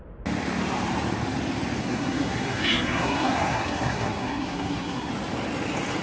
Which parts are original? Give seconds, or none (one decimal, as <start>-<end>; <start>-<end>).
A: 0.0-1.8; 5.1-6.0